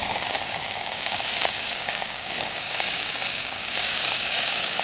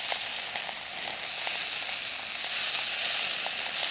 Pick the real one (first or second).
second